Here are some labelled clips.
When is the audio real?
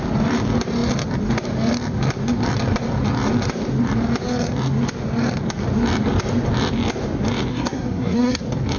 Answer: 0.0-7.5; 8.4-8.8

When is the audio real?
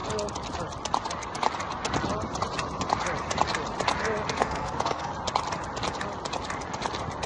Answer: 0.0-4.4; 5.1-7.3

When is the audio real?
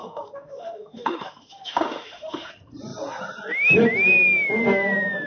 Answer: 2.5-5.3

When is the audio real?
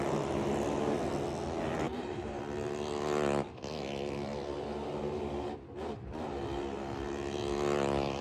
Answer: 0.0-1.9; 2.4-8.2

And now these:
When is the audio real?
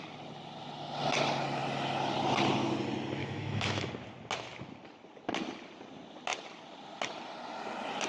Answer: 0.0-3.2; 3.9-8.1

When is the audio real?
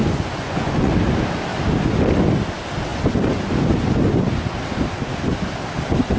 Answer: 0.9-6.2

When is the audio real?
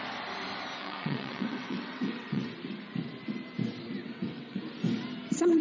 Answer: 0.0-0.8; 2.5-4.0; 4.6-5.6